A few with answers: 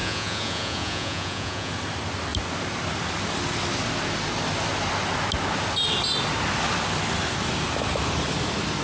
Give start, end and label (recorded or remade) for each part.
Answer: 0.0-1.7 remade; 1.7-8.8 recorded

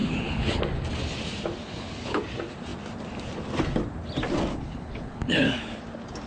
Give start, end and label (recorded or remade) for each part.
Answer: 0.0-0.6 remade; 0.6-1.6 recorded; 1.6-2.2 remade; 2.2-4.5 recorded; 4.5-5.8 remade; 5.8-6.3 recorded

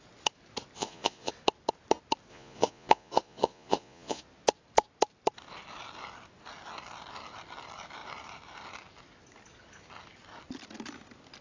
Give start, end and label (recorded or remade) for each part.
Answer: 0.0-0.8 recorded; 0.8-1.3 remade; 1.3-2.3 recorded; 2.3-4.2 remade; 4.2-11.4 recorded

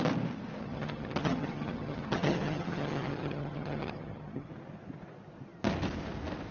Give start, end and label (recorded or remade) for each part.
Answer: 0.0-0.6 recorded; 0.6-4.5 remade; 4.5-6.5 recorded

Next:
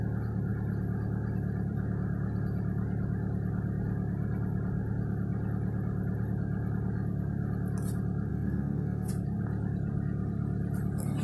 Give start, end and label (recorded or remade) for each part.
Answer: 0.0-8.3 recorded; 8.3-9.1 remade; 9.1-11.2 recorded